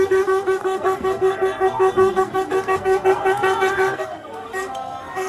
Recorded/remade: remade